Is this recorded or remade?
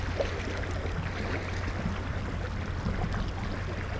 recorded